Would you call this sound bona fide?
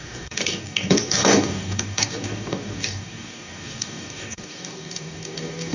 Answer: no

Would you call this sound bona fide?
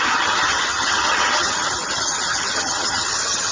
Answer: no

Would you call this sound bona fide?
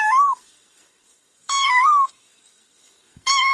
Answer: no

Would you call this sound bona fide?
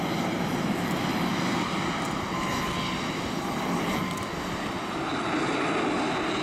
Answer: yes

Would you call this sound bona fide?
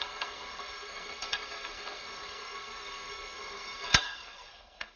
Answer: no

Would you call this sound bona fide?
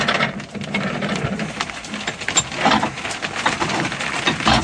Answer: yes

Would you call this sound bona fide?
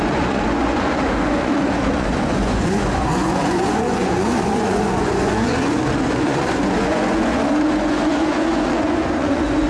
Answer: no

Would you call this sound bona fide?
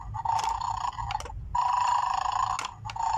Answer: yes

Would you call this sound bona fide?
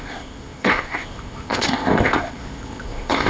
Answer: no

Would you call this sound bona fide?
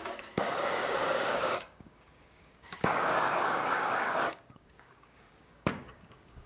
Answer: no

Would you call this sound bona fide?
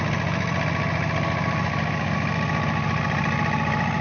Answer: yes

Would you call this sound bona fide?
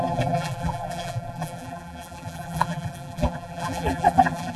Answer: no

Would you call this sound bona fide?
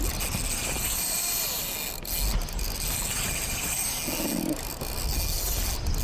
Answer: yes